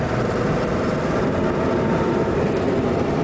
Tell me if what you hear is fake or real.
fake